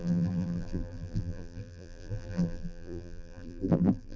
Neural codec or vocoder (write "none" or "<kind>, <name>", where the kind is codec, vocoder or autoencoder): vocoder, BigVGAN v2